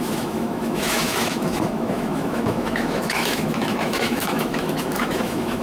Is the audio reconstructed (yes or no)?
yes